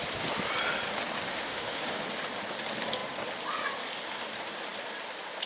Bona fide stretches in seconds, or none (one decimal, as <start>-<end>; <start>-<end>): 0.0-1.3; 1.8-5.5